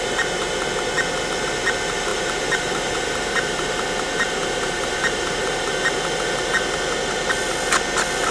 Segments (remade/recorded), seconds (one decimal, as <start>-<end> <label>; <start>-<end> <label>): 0.0-2.1 recorded; 2.1-5.7 remade; 5.7-8.3 recorded